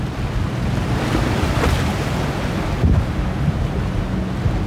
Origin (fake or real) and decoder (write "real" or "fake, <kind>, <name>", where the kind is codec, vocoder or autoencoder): real